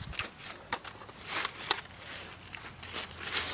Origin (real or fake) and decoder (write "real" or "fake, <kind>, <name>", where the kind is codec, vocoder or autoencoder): real